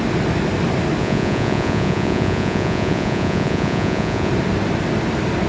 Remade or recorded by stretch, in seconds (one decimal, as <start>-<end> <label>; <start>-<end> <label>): 0.0-1.0 recorded; 1.0-4.3 remade; 4.3-5.5 recorded